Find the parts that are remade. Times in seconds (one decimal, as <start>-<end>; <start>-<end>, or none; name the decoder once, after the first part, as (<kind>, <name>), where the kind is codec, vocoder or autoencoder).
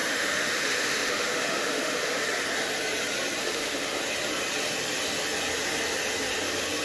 0.0-2.3 (autoencoder, DAC-VAE); 3.4-4.0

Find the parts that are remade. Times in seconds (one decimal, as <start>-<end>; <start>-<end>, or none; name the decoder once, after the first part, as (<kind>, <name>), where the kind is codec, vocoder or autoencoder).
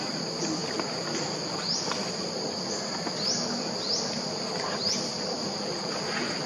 0.0-0.6 (vocoder, BigVGAN v2); 1.8-6.5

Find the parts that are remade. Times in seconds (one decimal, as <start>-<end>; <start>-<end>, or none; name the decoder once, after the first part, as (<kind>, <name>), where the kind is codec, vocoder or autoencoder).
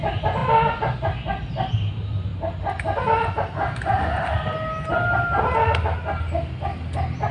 none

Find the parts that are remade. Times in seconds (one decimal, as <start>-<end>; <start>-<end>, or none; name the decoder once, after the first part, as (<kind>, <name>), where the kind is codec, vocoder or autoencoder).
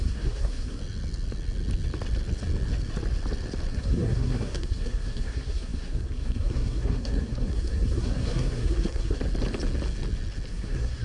0.0-0.8 (codec, SNAC); 3.7-9.2; 10.5-11.0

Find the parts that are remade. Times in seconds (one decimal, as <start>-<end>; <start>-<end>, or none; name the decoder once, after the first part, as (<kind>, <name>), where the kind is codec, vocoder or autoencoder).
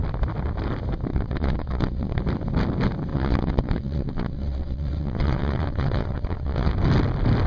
1.1-2.2 (vocoder, WaveNeXt); 3.1-6.7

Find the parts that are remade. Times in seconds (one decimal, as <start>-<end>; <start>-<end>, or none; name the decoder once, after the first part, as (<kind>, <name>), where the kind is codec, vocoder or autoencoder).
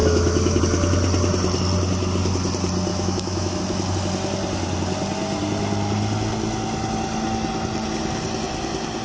0.0-0.6 (autoencoder, DAC-VAE); 2.9-3.6